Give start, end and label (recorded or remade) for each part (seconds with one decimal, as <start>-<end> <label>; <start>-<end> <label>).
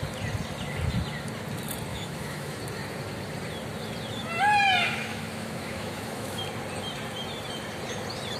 0.0-1.9 recorded; 1.9-2.6 remade; 2.6-4.8 recorded; 4.8-6.4 remade; 6.4-8.4 recorded